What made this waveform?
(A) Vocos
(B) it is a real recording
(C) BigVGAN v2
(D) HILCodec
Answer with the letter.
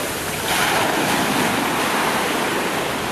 B